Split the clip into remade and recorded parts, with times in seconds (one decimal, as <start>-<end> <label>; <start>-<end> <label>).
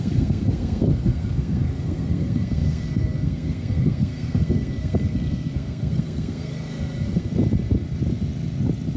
0.0-7.3 remade; 7.3-9.0 recorded